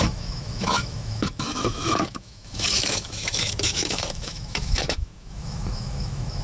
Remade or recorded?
remade